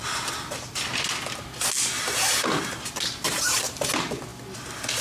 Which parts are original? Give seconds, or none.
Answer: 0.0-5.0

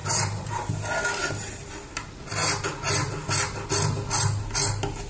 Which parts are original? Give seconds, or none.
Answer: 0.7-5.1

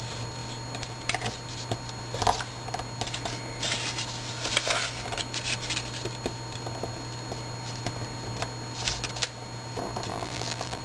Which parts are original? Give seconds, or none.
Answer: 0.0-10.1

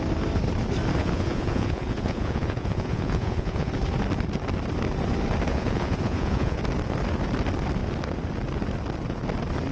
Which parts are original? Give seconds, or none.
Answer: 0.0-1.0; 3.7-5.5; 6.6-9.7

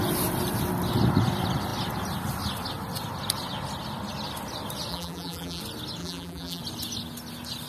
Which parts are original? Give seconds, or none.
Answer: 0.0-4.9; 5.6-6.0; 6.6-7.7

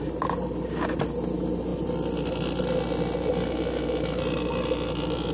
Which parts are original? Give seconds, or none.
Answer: 0.0-5.3

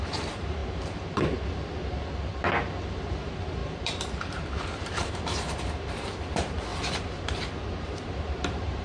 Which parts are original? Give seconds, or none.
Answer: 0.6-2.9